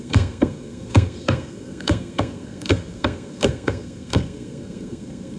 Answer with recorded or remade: remade